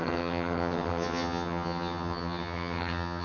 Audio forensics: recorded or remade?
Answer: remade